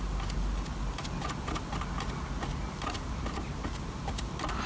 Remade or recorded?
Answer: recorded